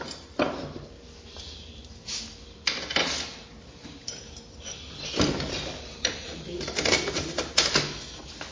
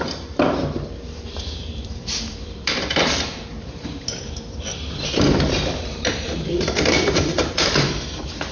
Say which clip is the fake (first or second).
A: second